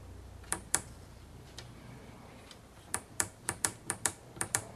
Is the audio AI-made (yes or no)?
yes